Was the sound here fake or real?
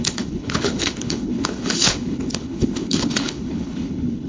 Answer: fake